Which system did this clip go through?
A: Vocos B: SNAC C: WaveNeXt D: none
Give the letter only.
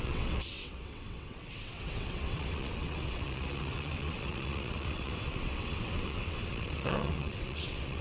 C